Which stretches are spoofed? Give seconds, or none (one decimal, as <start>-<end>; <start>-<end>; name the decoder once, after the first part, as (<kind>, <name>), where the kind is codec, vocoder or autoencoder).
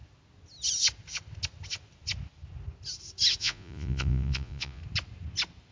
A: 3.4-4.8 (vocoder, Vocos)